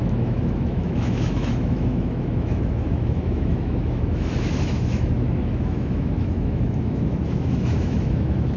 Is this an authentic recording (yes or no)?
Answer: no